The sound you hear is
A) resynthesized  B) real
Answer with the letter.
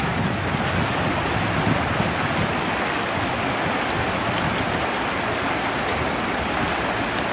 B